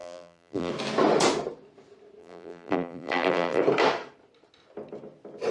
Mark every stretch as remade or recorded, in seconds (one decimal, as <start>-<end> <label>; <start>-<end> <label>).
0.0-0.7 remade; 0.7-2.2 recorded; 2.2-3.6 remade; 3.6-5.5 recorded